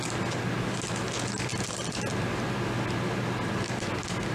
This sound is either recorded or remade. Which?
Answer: recorded